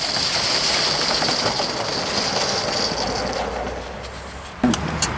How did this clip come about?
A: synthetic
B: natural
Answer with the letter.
B